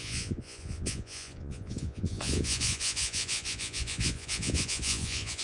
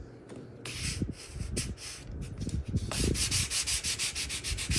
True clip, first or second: second